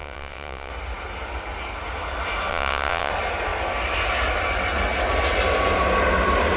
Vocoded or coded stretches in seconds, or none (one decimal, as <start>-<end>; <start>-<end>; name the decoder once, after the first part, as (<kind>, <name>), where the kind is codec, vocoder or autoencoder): 0.0-0.7 (vocoder, WaveNeXt); 2.5-3.1

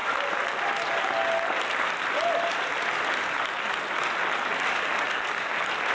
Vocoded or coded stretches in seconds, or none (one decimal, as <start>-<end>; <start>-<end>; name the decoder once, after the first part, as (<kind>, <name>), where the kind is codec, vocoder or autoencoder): none

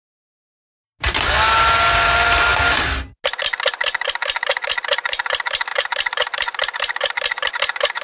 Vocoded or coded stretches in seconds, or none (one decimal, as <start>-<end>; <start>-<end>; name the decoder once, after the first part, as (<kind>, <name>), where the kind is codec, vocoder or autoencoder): 5.7-7.5 (vocoder, BigVGAN v2)

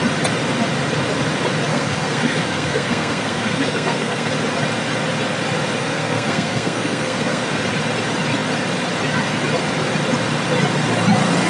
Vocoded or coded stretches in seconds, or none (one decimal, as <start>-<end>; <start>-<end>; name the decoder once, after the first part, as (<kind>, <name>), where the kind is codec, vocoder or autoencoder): 1.7-4.3 (codec, SNAC); 5.8-7.6

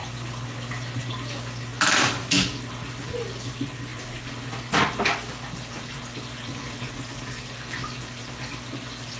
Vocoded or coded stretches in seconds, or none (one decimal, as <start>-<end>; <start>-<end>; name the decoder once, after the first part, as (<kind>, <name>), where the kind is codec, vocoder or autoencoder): none